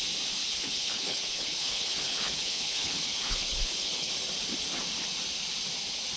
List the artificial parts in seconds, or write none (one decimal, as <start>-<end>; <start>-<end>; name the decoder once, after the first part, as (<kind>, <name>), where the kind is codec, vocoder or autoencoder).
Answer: 0.4-4.1 (codec, HILCodec)